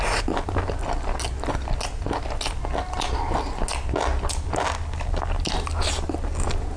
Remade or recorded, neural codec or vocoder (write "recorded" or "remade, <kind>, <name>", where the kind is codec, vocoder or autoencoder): recorded